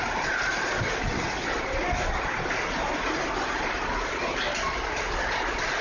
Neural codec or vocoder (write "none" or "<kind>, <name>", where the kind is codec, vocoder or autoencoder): none